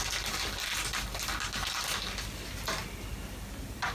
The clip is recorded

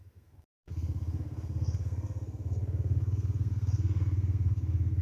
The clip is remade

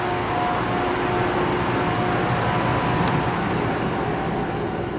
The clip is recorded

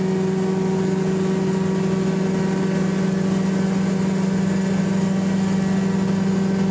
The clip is recorded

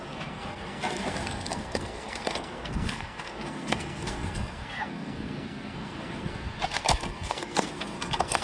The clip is remade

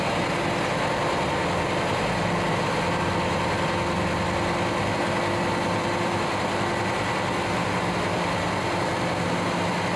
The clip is recorded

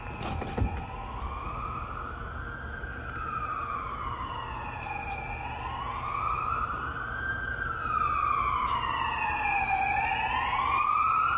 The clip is recorded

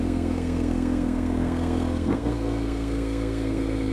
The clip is remade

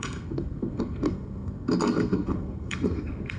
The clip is remade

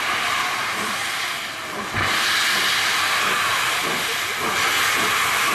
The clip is recorded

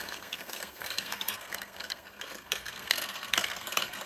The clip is remade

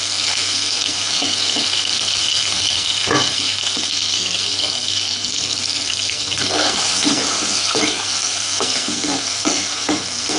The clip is remade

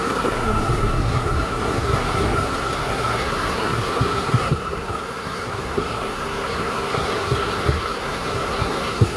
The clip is remade